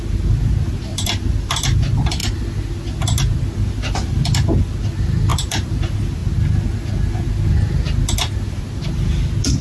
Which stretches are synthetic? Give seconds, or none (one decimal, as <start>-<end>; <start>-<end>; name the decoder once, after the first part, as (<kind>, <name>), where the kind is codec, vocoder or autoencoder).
0.9-1.8 (vocoder, BigVGAN v2); 5.3-5.8